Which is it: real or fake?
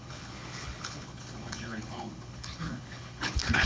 fake